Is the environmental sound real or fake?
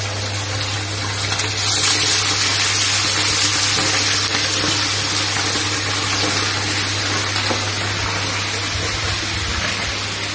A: real